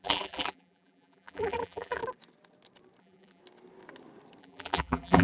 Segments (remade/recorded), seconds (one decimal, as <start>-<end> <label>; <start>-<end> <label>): 0.0-2.0 remade; 2.0-3.0 recorded; 3.0-3.4 remade; 3.4-4.4 recorded; 4.4-5.2 remade